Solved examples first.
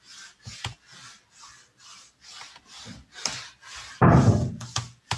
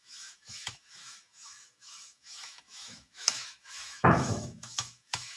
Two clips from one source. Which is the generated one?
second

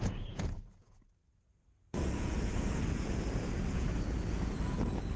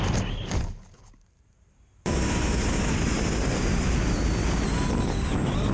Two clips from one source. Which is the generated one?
first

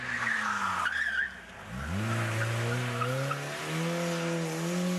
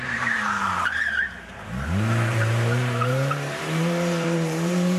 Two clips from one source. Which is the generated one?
second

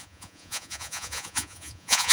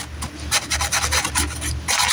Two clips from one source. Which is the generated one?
first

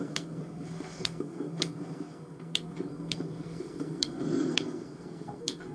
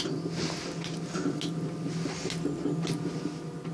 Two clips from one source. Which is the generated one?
first